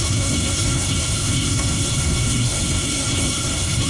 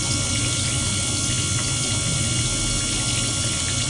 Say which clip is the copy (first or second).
first